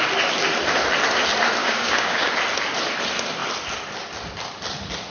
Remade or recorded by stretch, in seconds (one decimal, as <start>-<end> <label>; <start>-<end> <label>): 0.0-1.6 recorded; 1.6-2.3 remade; 2.3-5.1 recorded